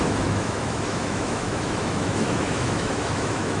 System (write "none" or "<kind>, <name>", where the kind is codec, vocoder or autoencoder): autoencoder, DAC-VAE